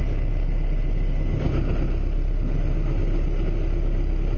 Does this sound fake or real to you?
real